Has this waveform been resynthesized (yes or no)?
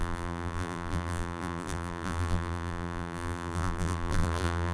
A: yes